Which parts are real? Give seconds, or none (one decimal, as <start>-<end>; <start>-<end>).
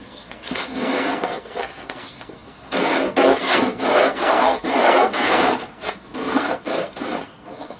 none